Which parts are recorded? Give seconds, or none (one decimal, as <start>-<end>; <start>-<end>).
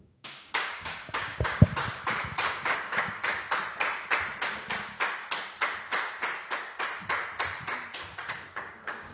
1.7-2.6; 3.2-8.5